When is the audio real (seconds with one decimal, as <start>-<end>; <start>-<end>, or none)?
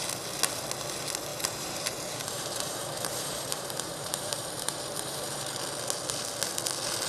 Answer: 0.0-1.3; 5.6-7.1